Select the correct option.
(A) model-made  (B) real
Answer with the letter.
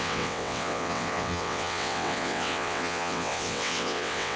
A